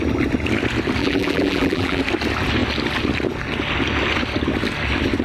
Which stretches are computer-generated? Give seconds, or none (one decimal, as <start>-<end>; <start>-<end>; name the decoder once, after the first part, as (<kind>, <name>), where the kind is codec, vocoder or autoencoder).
1.0-2.0 (vocoder, BigVGAN v2)